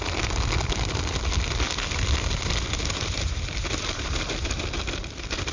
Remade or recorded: recorded